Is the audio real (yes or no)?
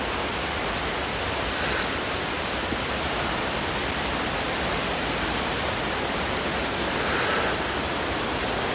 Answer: yes